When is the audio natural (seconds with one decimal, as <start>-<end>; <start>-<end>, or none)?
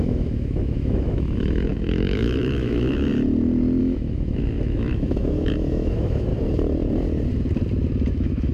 3.1-3.8; 6.3-8.1